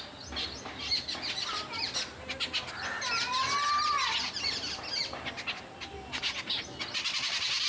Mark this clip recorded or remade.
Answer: recorded